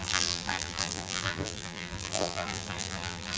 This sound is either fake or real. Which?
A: fake